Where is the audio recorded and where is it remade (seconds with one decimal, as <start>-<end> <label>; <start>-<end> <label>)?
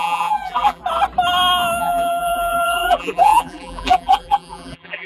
0.0-0.8 remade; 0.8-1.8 recorded; 1.8-5.1 remade